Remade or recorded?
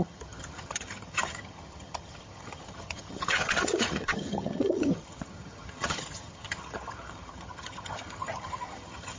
remade